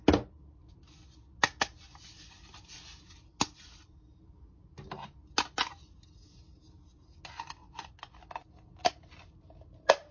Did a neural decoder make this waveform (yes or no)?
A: no